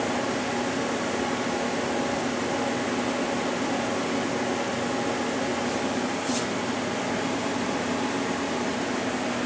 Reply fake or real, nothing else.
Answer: real